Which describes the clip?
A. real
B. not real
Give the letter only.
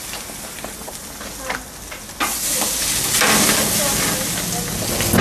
A